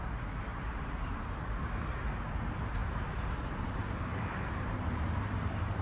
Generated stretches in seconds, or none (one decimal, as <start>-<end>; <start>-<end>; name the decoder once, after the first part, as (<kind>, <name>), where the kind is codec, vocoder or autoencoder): 0.5-1.6 (vocoder, BigVGAN v2); 2.8-5.2